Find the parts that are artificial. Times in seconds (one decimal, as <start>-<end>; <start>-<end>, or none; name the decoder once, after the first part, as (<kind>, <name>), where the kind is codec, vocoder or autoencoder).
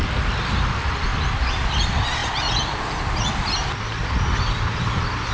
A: none